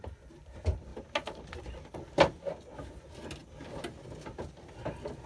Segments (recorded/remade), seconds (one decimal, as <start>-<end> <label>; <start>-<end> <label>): 0.0-5.3 recorded